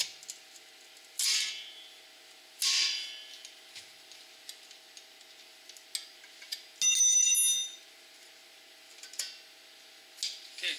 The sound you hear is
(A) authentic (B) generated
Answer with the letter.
A